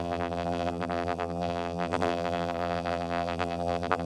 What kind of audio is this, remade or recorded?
remade